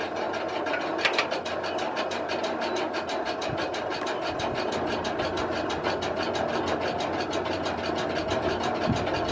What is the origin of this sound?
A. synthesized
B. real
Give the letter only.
B